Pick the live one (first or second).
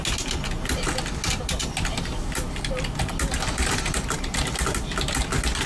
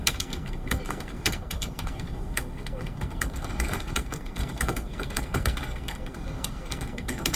first